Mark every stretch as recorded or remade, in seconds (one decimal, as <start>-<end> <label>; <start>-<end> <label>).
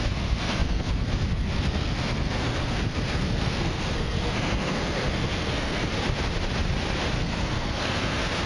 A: 0.0-5.9 remade; 5.9-7.2 recorded; 7.2-8.5 remade